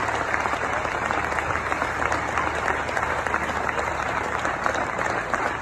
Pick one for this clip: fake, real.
real